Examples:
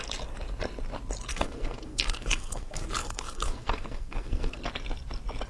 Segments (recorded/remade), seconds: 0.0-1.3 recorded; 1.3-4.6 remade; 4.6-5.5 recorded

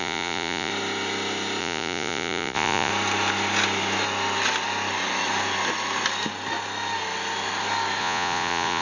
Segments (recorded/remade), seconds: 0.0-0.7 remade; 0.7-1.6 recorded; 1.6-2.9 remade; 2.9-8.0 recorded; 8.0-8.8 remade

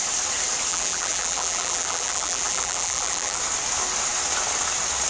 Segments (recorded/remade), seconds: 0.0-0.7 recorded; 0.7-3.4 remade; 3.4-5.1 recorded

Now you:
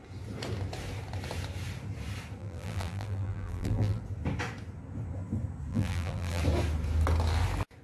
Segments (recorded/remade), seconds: 0.0-2.4 recorded; 2.4-4.0 remade; 4.0-5.7 recorded; 5.7-6.4 remade; 6.4-7.8 recorded